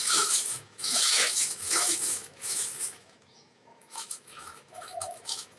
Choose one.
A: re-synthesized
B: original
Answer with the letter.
A